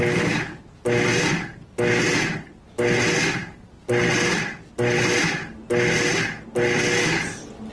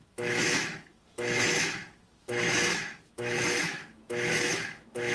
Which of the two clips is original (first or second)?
first